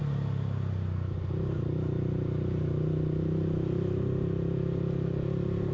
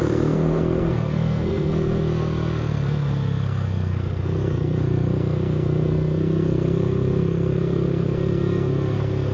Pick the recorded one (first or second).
first